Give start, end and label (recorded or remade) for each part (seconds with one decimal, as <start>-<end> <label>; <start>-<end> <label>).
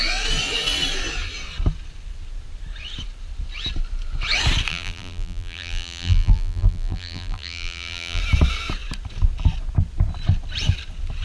0.0-4.7 recorded; 4.7-8.2 remade; 8.2-11.2 recorded